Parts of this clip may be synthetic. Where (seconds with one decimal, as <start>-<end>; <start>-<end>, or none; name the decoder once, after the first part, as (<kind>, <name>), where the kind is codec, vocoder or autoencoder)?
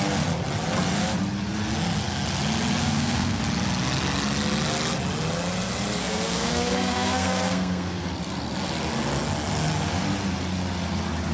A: 2.8-3.4 (codec, SNAC); 6.0-8.0